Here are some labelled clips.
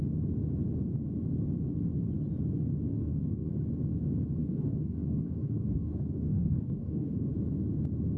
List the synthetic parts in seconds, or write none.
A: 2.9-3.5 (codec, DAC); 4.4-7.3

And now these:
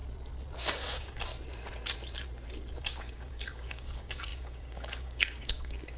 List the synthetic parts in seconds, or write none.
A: 0.6-1.3 (codec, DAC); 2.8-6.0

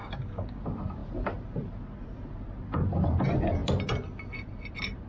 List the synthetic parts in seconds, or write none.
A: 0.0-0.6 (codec, DAC)

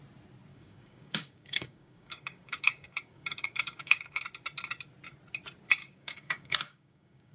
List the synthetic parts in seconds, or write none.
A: 0.5-4.2 (codec, DAC); 5.8-7.3

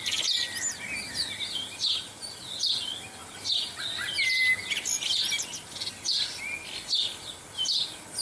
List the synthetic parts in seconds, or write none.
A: none